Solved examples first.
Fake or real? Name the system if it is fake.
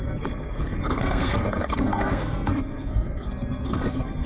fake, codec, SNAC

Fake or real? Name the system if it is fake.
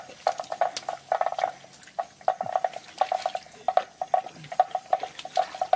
real